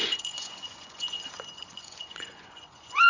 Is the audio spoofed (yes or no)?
yes